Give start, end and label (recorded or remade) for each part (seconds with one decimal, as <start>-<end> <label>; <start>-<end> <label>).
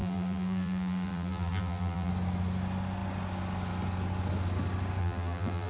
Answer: 0.0-2.1 remade; 2.1-5.0 recorded; 5.0-5.7 remade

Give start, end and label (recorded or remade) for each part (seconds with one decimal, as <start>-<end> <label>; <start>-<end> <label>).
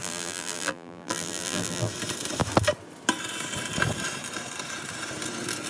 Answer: 0.0-1.9 remade; 1.9-5.7 recorded